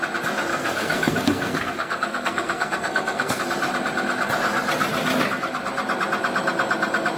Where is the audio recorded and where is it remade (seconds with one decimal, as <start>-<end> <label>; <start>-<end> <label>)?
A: 0.0-0.5 recorded; 0.5-3.4 remade; 3.4-7.2 recorded